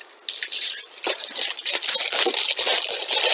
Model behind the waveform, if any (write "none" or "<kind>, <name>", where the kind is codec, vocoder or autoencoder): none